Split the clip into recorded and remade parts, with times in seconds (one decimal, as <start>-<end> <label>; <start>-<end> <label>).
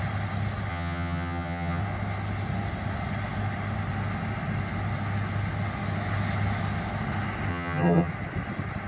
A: 0.0-0.7 recorded; 0.7-1.8 remade; 1.8-7.5 recorded; 7.5-8.1 remade; 8.1-8.9 recorded